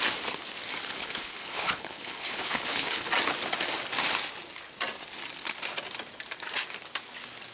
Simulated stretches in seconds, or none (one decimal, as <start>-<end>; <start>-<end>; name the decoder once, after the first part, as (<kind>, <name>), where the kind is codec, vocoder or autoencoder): 1.0-3.1 (codec, HILCodec)